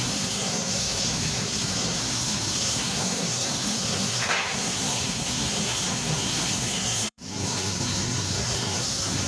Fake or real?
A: fake